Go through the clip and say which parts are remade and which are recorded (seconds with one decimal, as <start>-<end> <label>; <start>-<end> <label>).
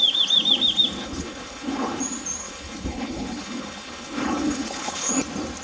0.0-1.0 recorded; 1.0-2.0 remade; 2.0-2.4 recorded; 2.4-5.1 remade; 5.1-5.6 recorded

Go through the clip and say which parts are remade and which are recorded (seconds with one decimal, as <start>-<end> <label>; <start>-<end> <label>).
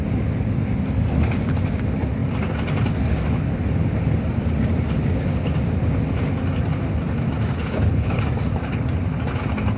0.0-7.5 recorded; 7.5-8.2 remade; 8.2-9.8 recorded